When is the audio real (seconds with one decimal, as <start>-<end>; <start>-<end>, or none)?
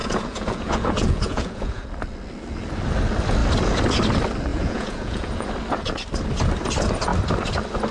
1.8-4.5; 5.5-7.9